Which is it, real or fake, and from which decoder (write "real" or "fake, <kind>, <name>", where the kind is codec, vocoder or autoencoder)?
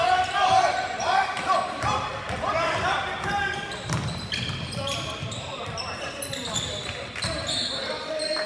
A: real